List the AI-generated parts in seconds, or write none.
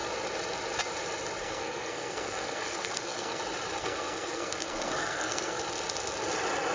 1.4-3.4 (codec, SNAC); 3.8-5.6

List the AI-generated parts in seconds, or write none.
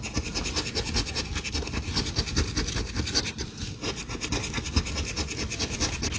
none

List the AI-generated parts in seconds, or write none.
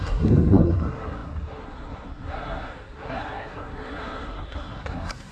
0.0-5.3 (codec, SNAC)